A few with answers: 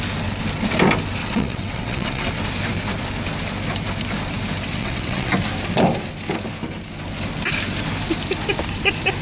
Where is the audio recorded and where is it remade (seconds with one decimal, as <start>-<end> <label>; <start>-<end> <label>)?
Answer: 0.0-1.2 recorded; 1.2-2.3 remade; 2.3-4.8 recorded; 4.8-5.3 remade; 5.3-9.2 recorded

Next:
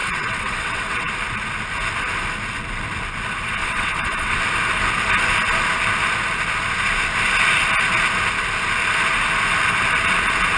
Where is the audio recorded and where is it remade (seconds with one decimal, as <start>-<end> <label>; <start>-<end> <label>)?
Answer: 0.0-1.1 remade; 1.1-3.6 recorded; 3.6-4.4 remade; 4.4-10.6 recorded

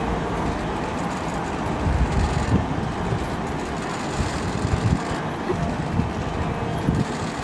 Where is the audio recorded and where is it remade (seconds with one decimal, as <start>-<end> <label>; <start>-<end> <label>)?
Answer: 0.0-7.4 recorded

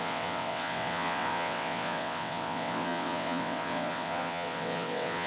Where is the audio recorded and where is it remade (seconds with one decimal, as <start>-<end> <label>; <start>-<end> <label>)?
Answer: 0.0-5.3 remade

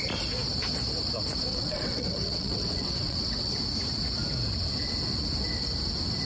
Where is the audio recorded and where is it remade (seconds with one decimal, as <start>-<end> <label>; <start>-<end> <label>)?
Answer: 0.0-1.5 recorded; 1.5-3.5 remade; 3.5-6.2 recorded